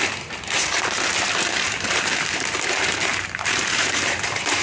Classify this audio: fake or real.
fake